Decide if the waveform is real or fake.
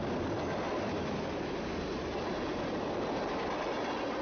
real